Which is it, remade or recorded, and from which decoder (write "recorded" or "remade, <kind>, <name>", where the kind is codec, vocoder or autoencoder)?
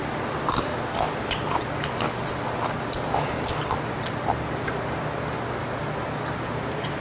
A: recorded